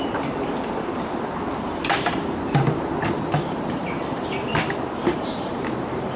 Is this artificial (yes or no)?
yes